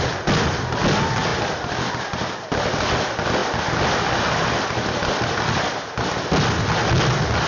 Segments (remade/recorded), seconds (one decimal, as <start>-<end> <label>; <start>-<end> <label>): 0.0-1.3 recorded; 1.3-1.9 remade; 1.9-7.5 recorded